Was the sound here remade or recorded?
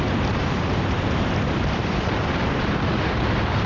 remade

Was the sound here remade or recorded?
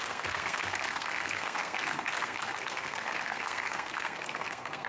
remade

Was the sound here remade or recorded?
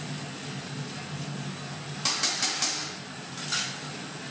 recorded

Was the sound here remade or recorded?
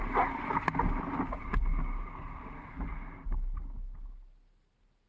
recorded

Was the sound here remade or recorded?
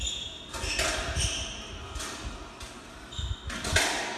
recorded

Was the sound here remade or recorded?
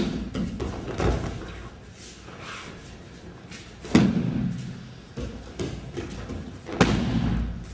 recorded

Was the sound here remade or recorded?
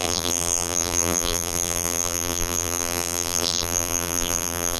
remade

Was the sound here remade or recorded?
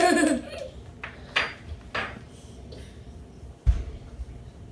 recorded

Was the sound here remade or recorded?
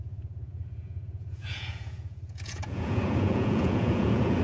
remade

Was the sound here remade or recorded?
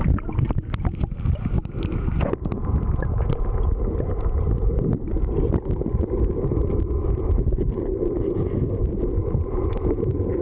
recorded